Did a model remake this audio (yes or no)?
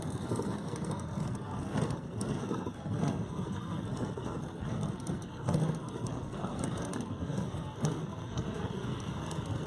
yes